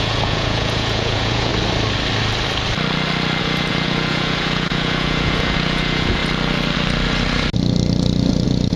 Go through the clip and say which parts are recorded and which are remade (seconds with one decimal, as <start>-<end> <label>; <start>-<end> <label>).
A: 0.0-1.5 remade; 1.5-3.4 recorded; 3.4-6.2 remade; 6.2-8.3 recorded; 8.3-8.8 remade